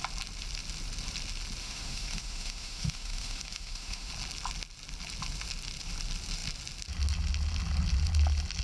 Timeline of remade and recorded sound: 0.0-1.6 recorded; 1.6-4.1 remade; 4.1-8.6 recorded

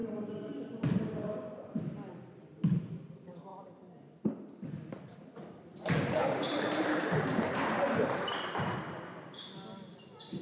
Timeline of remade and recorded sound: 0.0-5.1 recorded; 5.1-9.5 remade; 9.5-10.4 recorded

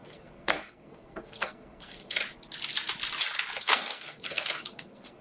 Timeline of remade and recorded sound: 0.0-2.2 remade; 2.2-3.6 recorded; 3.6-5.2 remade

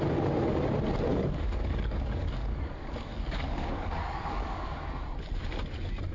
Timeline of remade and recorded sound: 0.0-1.1 recorded; 1.1-4.8 remade; 4.8-6.1 recorded

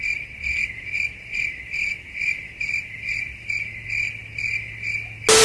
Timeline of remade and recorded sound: 0.0-0.6 recorded; 0.6-3.5 remade; 3.5-5.4 recorded